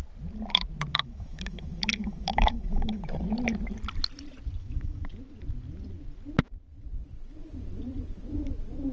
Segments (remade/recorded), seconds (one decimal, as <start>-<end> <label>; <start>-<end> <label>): 0.0-0.9 recorded; 0.9-3.0 remade; 3.0-4.6 recorded; 4.6-5.1 remade; 5.1-8.9 recorded